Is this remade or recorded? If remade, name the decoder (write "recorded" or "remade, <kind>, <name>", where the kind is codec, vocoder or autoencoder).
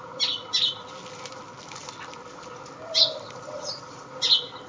recorded